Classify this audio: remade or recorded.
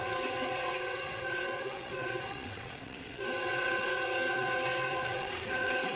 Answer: remade